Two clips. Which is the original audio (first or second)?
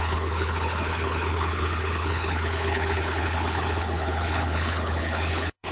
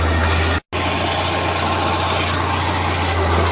second